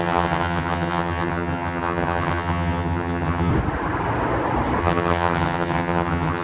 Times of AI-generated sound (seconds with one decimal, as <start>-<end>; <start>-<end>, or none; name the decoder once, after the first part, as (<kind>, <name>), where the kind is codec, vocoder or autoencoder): 0.0-3.5 (vocoder, HiFi-GAN); 4.8-6.4